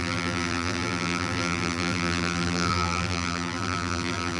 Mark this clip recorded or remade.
remade